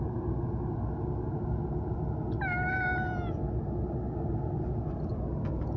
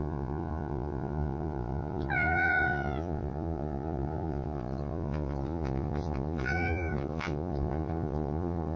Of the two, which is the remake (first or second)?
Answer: second